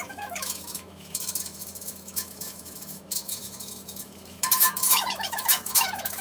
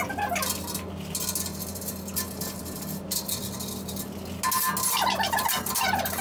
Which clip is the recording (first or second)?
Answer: second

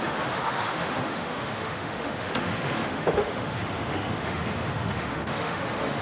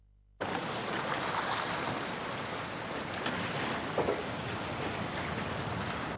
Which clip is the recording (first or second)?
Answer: second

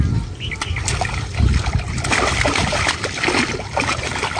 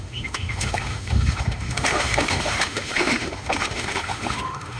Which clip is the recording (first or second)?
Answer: first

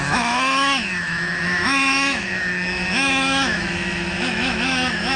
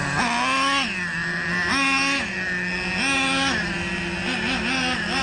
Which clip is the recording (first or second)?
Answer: second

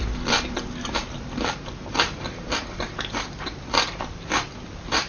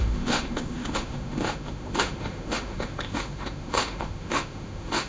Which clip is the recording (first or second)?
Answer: first